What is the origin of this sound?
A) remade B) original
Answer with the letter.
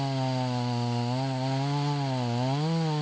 B